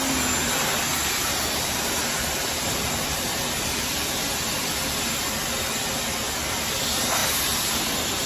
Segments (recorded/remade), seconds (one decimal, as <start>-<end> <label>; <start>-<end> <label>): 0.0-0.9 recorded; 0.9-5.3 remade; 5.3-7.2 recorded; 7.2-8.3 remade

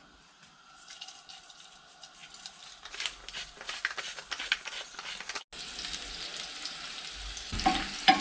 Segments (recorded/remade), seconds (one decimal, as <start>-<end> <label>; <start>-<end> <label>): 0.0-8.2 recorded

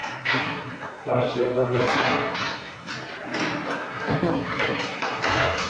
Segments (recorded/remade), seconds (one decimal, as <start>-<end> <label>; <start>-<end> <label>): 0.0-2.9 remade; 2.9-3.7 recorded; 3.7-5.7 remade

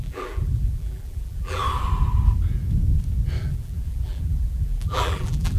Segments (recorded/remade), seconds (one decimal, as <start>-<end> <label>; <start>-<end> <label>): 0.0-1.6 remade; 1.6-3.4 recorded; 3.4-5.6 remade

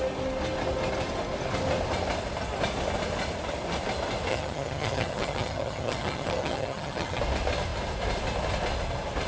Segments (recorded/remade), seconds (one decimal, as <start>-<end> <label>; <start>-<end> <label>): 0.0-4.3 recorded; 4.3-7.2 remade; 7.2-9.3 recorded

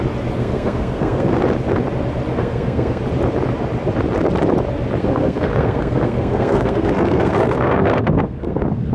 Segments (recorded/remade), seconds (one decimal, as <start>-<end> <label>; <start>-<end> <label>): 0.0-0.4 recorded; 0.4-1.4 remade; 1.4-2.3 recorded; 2.3-3.0 remade; 3.0-5.0 recorded; 5.0-8.9 remade

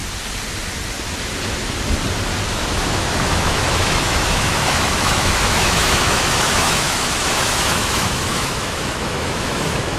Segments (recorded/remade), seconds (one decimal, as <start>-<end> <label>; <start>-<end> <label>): 0.0-2.5 recorded; 2.5-10.0 remade

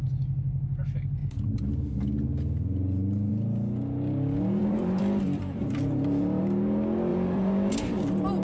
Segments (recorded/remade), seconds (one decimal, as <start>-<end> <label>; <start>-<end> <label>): 0.0-4.6 recorded; 4.6-6.4 remade; 6.4-7.1 recorded; 7.1-7.7 remade; 7.7-8.4 recorded